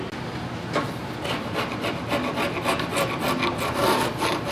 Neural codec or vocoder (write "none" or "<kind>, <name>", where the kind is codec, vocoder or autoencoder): none